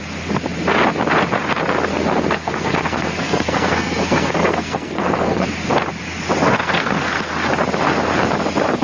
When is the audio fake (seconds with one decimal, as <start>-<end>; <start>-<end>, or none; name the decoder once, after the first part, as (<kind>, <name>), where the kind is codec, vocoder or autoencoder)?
1.9-5.5 (codec, SNAC); 6.5-7.3